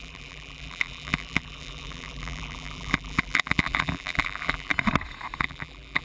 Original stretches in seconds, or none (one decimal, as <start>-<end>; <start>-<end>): 4.7-5.4